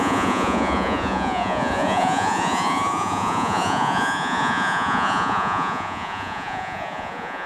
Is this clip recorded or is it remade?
remade